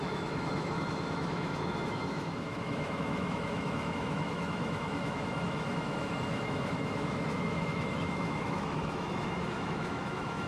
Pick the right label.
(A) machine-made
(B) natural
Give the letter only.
A